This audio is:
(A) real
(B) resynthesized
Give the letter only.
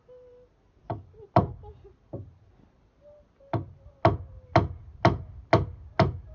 A